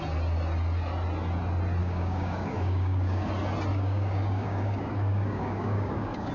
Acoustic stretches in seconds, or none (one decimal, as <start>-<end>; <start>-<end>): 0.0-1.8; 3.3-3.7